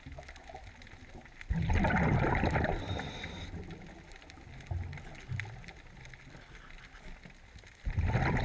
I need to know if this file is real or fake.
real